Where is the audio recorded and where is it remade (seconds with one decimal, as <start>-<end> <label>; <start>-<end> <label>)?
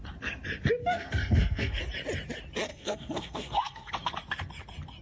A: 0.0-0.8 recorded; 0.8-1.8 remade; 1.8-2.7 recorded; 2.7-3.9 remade; 3.9-5.0 recorded